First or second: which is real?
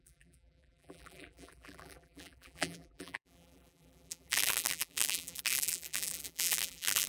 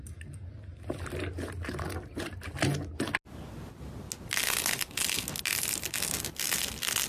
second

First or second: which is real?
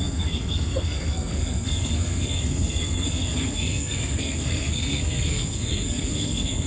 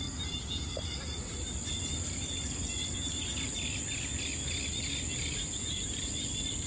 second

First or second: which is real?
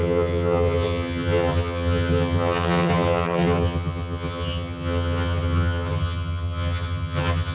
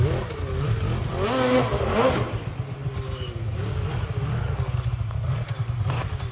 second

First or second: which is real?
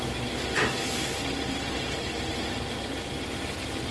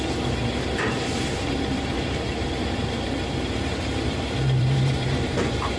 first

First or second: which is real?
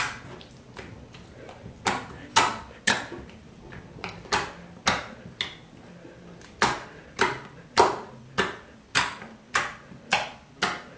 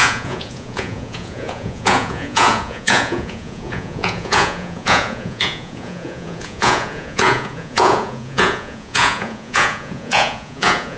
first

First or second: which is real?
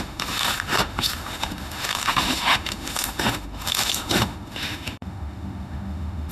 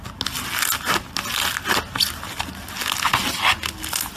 second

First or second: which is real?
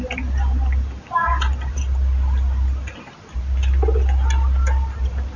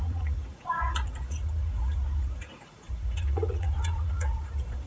first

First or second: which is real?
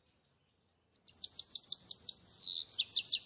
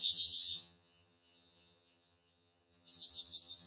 first